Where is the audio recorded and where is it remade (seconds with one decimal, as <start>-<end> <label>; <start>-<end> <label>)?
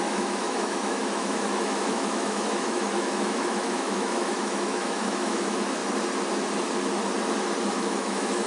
0.0-5.8 remade; 5.8-7.7 recorded; 7.7-8.5 remade